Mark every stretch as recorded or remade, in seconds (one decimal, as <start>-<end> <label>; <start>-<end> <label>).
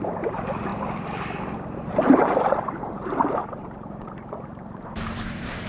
0.0-0.7 remade; 0.7-1.9 recorded; 1.9-5.7 remade